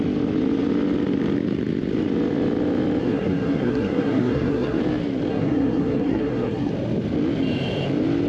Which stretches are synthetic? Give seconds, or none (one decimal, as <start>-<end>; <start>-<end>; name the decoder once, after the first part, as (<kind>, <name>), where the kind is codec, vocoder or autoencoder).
3.0-4.8 (codec, SNAC); 5.3-6.7